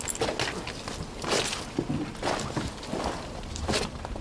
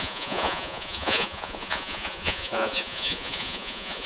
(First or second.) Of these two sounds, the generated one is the second